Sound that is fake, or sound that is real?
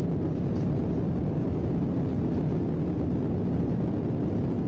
real